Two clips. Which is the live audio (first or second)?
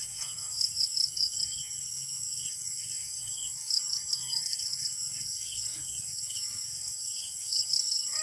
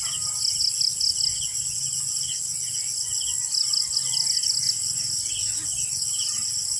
second